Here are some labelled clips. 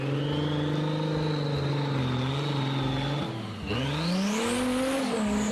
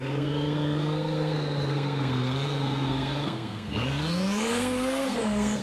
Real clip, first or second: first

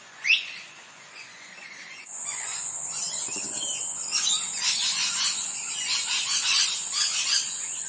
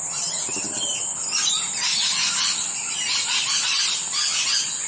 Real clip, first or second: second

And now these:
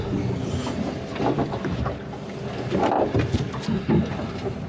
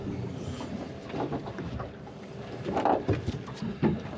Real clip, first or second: first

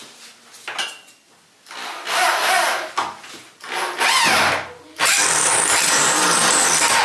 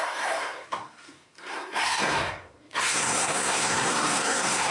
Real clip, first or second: first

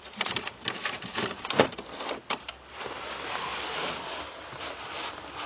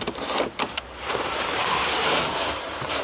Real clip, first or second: first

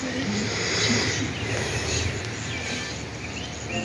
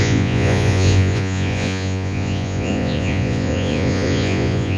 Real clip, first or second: first